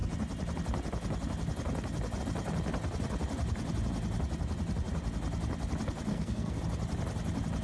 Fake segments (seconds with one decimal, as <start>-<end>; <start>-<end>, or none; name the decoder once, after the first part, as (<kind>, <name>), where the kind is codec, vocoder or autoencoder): 6.1-6.6 (codec, SNAC)